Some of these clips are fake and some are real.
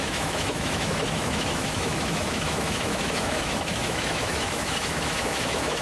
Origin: fake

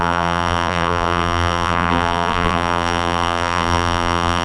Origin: fake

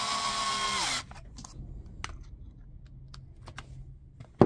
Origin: real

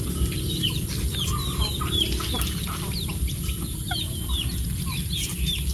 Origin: real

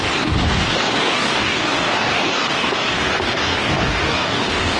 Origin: fake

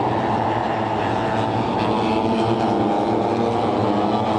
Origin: real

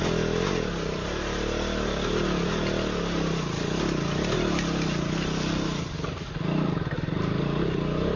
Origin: real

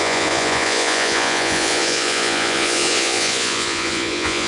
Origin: fake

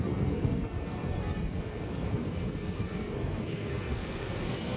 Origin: fake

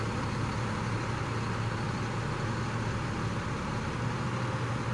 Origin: real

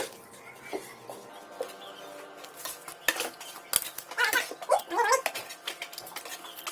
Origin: real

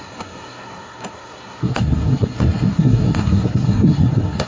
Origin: fake